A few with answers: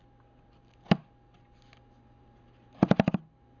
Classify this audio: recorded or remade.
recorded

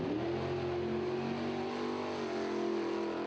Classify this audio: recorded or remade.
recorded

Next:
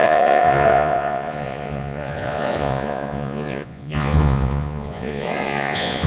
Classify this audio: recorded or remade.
remade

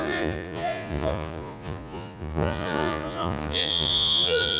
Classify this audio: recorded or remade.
remade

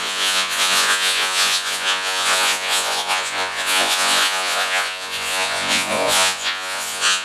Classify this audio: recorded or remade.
remade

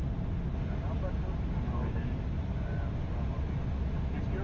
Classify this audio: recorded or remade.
recorded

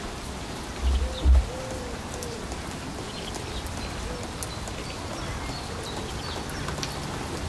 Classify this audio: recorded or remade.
recorded